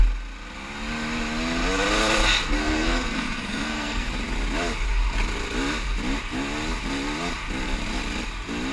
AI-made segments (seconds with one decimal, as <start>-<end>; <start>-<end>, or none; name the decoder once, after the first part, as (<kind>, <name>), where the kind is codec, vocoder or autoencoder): 2.6-4.1 (codec, SNAC)